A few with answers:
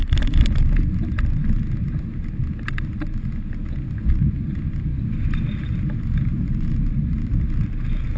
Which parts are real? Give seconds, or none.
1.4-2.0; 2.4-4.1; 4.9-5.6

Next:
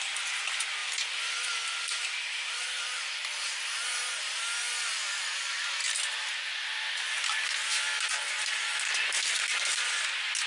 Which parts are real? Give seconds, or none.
0.0-10.5

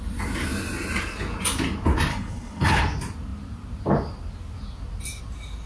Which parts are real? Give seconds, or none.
0.0-2.1; 2.8-5.7

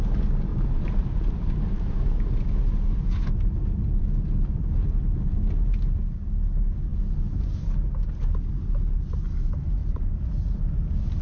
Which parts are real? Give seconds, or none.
0.0-0.5; 1.9-9.8; 10.6-11.2

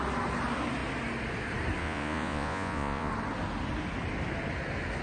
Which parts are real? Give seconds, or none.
0.0-1.8; 3.1-5.0

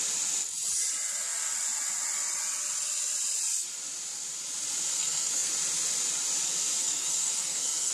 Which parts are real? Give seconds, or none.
0.0-4.9; 5.5-6.8

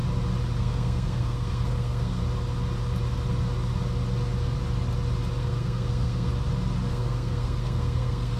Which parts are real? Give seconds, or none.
0.0-0.6; 2.2-5.4; 6.3-6.9